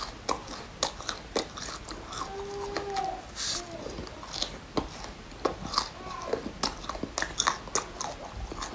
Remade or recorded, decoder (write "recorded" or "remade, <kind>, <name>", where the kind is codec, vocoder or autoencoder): recorded